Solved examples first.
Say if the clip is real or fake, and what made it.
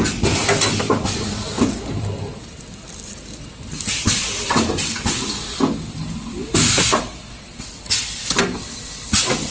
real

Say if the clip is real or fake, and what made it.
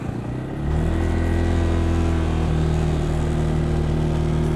real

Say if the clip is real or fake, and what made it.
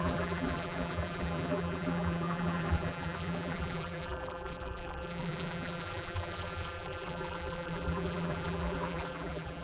fake, vocoder, BigVGAN v2